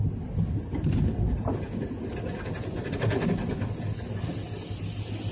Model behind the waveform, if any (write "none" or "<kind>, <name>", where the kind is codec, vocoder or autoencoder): none